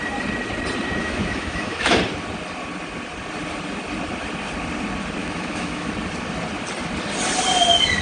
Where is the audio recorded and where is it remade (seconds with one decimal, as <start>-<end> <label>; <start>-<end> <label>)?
0.0-1.0 recorded; 1.0-2.0 remade; 2.0-5.2 recorded; 5.2-5.9 remade; 5.9-8.0 recorded